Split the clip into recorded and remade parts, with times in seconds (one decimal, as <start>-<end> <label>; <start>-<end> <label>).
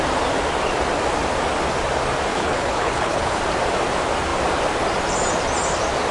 0.0-2.3 recorded; 2.3-3.4 remade; 3.4-6.1 recorded